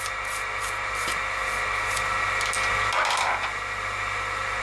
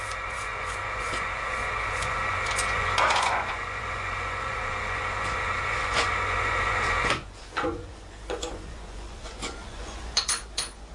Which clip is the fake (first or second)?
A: second